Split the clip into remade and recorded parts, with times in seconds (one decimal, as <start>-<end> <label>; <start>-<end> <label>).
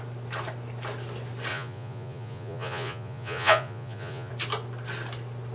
0.0-1.5 recorded; 1.5-4.3 remade; 4.3-5.5 recorded